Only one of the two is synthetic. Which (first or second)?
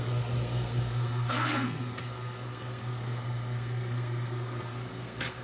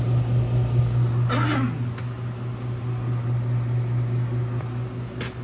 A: first